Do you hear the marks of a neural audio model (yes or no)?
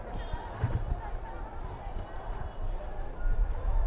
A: no